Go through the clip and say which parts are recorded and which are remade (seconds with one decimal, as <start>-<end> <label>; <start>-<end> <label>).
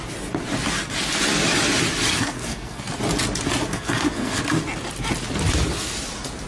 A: 0.0-2.1 recorded; 2.1-2.8 remade; 2.8-3.7 recorded; 3.7-4.4 remade; 4.4-6.5 recorded